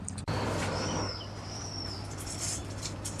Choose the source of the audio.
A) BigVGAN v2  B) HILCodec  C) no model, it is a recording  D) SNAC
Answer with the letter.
A